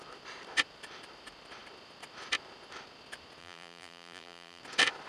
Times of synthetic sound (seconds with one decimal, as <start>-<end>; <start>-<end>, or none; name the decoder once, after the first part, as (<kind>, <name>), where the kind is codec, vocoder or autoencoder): 3.4-4.6 (vocoder, BigVGAN v2)